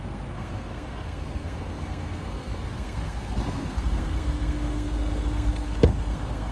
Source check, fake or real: fake